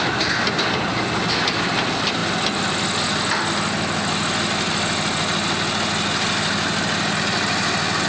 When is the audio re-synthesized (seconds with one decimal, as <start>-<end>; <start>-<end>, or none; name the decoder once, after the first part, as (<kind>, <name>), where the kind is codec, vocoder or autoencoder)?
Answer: none